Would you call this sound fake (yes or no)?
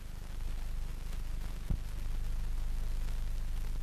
no